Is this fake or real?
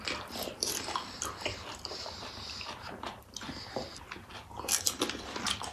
fake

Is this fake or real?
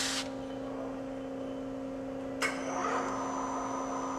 real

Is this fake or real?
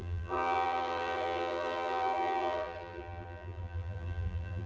fake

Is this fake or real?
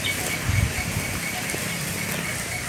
real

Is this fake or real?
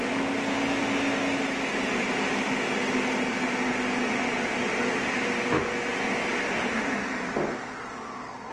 real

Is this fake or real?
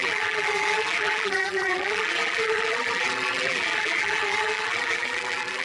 fake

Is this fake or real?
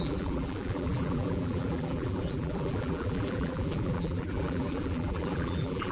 fake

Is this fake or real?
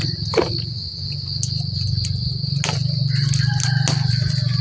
real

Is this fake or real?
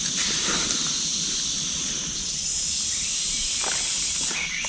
real